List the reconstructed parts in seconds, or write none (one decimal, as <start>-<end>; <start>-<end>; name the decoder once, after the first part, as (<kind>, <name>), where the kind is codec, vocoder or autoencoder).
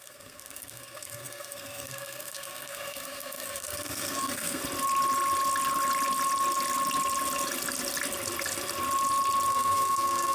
0.0-4.6 (codec, SNAC); 9.5-10.3